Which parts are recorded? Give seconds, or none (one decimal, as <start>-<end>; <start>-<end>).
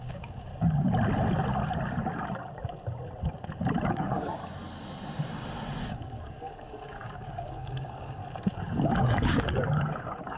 0.5-3.9; 4.4-5.8; 8.2-8.8